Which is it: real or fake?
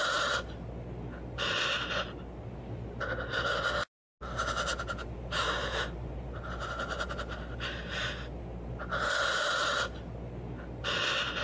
real